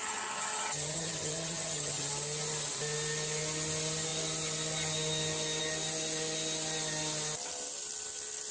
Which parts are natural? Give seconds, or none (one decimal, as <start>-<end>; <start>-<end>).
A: 2.1-8.5